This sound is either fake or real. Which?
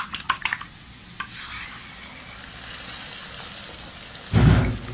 real